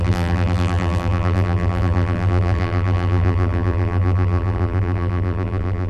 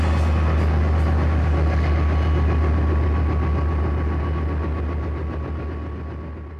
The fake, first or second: first